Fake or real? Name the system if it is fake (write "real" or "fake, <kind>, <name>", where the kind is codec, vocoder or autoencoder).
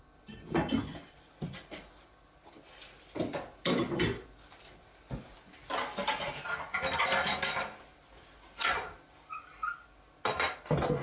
real